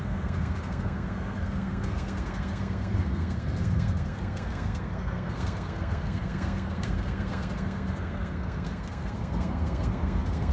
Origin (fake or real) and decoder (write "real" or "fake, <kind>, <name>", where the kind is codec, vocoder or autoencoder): fake, codec, SNAC